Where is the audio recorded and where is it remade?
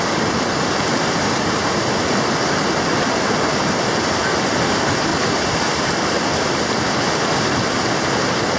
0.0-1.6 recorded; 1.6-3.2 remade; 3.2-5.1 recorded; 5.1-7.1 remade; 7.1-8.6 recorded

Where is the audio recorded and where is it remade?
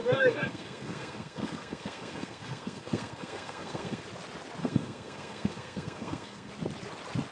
0.0-4.0 remade; 4.0-4.6 recorded; 4.6-6.5 remade; 6.5-7.3 recorded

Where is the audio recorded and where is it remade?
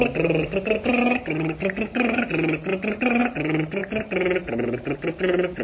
0.0-1.0 recorded; 1.0-2.3 remade; 2.3-5.6 recorded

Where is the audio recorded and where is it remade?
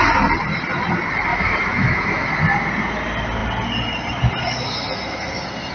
0.0-1.3 recorded; 1.3-2.3 remade; 2.3-5.7 recorded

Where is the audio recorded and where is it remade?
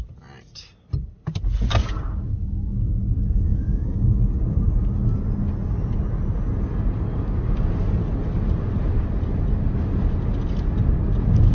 0.0-3.5 recorded; 3.5-4.2 remade; 4.2-11.5 recorded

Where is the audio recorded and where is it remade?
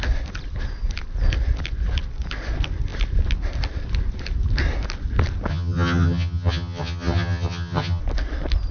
0.0-5.5 recorded; 5.5-8.0 remade; 8.0-8.7 recorded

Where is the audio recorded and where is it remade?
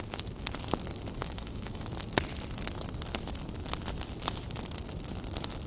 0.0-1.2 recorded; 1.2-1.9 remade; 1.9-5.7 recorded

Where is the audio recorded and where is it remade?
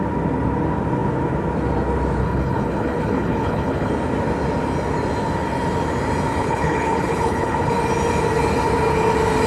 0.0-2.2 recorded; 2.2-3.9 remade; 3.9-6.4 recorded; 6.4-7.7 remade; 7.7-9.5 recorded